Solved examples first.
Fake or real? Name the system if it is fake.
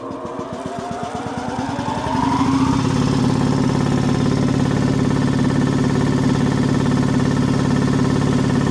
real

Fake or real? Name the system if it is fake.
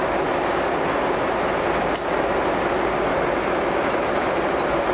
real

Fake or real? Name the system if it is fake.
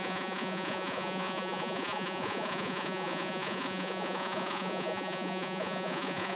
fake, vocoder, Vocos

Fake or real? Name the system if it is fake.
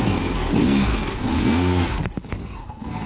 fake, codec, SNAC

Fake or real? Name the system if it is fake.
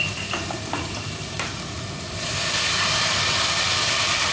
real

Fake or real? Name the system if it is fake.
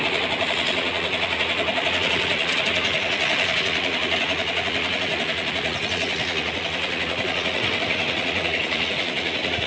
fake, vocoder, Vocos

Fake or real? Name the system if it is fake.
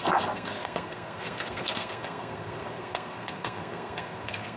fake, codec, SNAC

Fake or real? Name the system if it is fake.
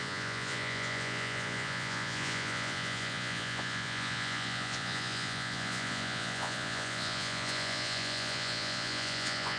fake, vocoder, Vocos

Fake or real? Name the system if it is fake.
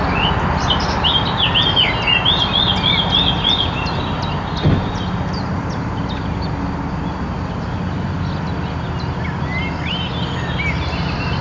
real